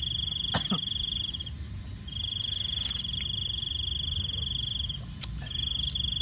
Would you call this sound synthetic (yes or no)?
no